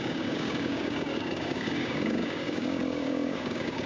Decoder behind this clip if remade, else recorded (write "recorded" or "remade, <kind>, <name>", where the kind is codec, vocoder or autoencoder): remade, codec, DAC